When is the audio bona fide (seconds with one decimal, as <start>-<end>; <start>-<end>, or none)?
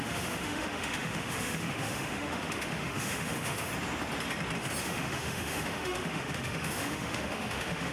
3.7-4.8